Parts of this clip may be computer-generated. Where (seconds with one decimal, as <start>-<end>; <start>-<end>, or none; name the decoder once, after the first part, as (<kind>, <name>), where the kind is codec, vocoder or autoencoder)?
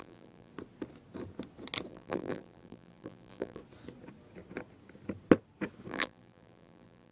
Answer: 0.0-0.5 (vocoder, BigVGAN v2); 1.9-3.6; 5.9-7.1